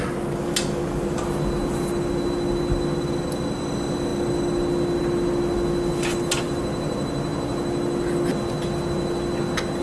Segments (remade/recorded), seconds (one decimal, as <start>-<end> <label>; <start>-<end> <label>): 0.0-9.8 recorded